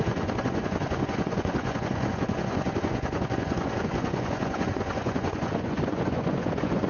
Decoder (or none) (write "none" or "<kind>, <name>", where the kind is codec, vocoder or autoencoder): vocoder, Vocos